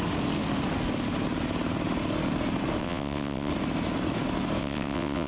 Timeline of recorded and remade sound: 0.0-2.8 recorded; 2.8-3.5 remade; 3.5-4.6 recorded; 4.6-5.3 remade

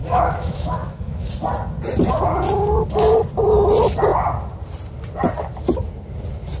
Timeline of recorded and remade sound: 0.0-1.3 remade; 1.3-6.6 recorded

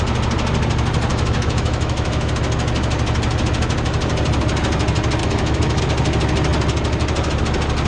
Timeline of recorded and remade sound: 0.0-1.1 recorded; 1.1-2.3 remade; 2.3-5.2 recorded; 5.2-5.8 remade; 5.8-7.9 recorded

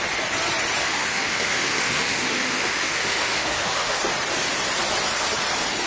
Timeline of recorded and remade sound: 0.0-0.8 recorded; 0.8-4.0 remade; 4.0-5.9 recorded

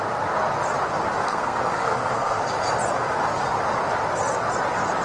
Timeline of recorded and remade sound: 0.0-1.2 recorded; 1.2-2.4 remade; 2.4-5.0 recorded

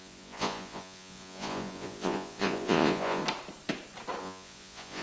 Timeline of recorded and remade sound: 0.0-3.2 remade; 3.2-4.2 recorded; 4.2-5.0 remade